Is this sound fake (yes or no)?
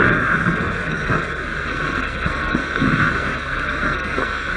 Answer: yes